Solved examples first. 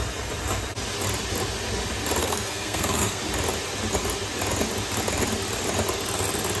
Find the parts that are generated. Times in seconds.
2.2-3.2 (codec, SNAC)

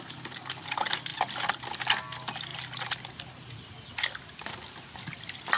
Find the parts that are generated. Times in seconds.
none

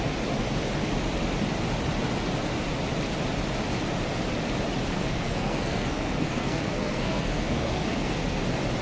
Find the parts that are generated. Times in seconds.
4.9-8.4 (codec, SNAC)

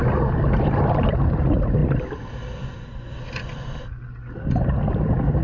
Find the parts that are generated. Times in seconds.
none

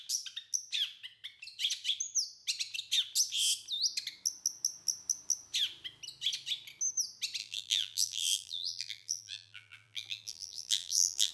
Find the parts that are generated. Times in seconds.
7.4-11.3 (vocoder, BigVGAN v2)

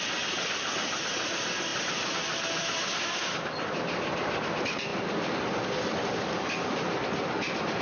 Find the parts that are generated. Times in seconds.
1.7-6.4 (vocoder, BigVGAN v2)

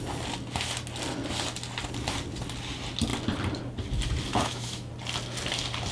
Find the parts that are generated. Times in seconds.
4.3-4.9 (autoencoder, DAC-VAE)